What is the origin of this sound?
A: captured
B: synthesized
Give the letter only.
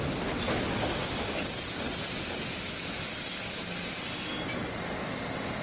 A